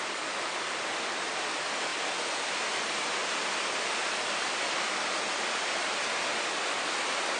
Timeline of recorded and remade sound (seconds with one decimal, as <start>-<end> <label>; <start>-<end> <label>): 0.0-7.4 recorded